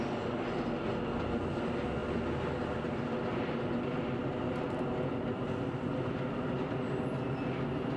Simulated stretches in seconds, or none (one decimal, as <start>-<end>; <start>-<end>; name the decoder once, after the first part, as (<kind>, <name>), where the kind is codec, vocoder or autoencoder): none